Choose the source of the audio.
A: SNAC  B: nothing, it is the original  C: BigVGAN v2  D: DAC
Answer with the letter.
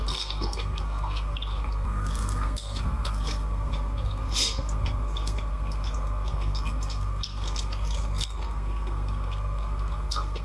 A